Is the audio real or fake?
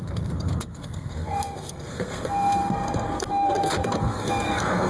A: fake